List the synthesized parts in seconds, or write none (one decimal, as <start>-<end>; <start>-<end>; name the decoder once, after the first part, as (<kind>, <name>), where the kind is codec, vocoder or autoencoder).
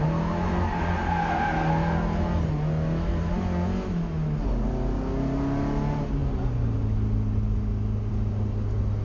none